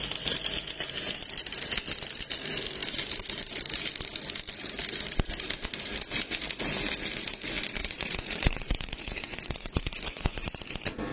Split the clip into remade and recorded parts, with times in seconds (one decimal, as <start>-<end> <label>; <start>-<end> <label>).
0.0-7.8 recorded; 7.8-10.6 remade; 10.6-11.1 recorded